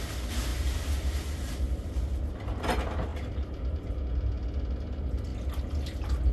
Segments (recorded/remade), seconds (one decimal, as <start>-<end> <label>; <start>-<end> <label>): 0.0-0.5 recorded; 0.5-1.9 remade; 1.9-3.1 recorded; 3.1-4.0 remade; 4.0-6.3 recorded

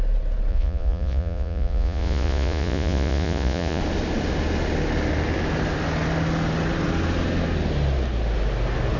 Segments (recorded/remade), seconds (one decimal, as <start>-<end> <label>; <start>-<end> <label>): 0.0-0.5 recorded; 0.5-3.8 remade; 3.8-9.0 recorded

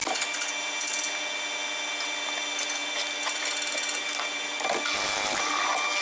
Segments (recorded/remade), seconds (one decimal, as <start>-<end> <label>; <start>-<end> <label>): 0.0-6.0 recorded

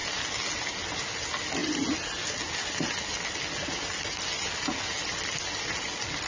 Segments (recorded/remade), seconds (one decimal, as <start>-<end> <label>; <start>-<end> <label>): 0.0-6.3 recorded

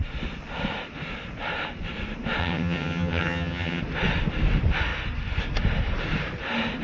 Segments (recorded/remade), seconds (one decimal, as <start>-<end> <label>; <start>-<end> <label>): 0.0-2.4 recorded; 2.4-3.8 remade; 3.8-6.8 recorded

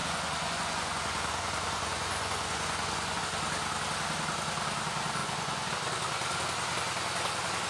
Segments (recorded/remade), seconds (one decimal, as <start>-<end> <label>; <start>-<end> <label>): 0.0-3.2 remade; 3.2-5.2 recorded; 5.2-5.7 remade; 5.7-7.7 recorded

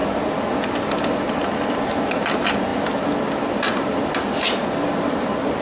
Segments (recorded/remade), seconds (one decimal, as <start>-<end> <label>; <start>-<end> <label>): 0.0-5.6 recorded

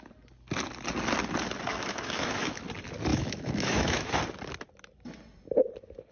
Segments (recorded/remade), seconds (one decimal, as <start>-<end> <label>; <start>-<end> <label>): 0.0-1.7 recorded; 1.7-2.6 remade; 2.6-3.1 recorded; 3.1-4.2 remade; 4.2-6.1 recorded